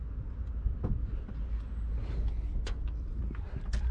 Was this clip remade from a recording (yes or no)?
no